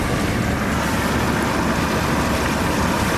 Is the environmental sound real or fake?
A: real